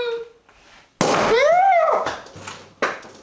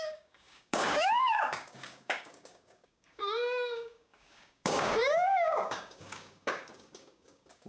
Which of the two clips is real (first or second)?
first